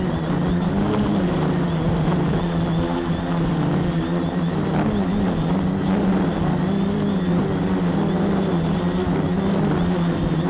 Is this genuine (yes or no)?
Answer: yes